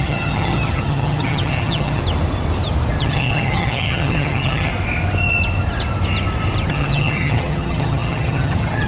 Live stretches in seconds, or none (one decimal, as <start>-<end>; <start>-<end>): 2.0-3.0; 4.7-6.7